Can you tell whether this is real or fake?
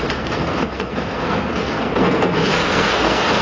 fake